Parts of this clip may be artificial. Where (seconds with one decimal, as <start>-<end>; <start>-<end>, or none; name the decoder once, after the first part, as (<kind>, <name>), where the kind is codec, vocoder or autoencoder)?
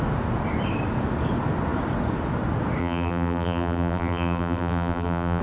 2.8-5.4 (vocoder, BigVGAN v2)